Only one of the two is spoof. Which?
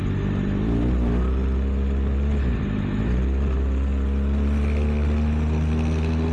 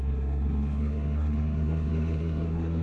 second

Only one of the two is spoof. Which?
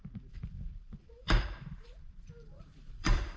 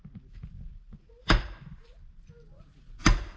first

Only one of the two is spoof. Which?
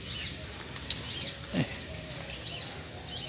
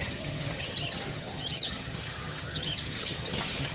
second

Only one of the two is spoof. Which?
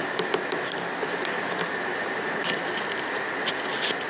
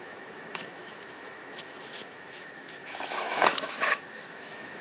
second